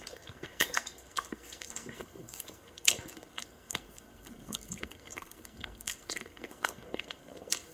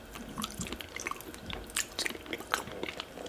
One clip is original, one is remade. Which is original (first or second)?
second